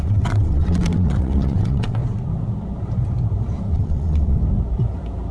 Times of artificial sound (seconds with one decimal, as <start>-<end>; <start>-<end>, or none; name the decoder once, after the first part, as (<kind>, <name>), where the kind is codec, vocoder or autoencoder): 0.0-2.0 (vocoder, WaveNeXt); 3.7-4.4